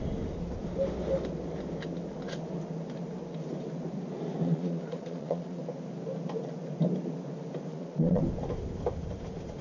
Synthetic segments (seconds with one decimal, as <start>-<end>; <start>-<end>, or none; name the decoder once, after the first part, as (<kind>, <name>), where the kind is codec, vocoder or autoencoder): 4.4-5.6 (vocoder, Vocos); 7.7-8.2